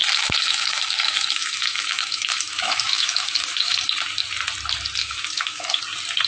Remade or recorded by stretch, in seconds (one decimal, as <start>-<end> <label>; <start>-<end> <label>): 0.0-3.8 remade; 3.8-5.0 recorded; 5.0-5.8 remade; 5.8-6.3 recorded